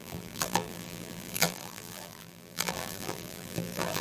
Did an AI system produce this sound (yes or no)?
yes